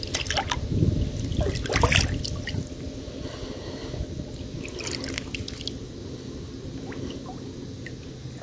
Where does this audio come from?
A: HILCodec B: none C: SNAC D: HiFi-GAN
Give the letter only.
B